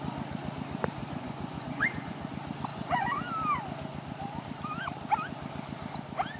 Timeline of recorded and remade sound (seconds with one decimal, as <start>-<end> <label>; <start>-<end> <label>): 0.0-1.0 recorded; 1.0-2.3 remade; 2.3-2.7 recorded; 2.7-3.3 remade; 3.3-6.4 recorded